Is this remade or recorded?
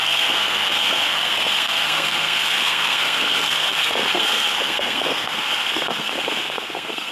remade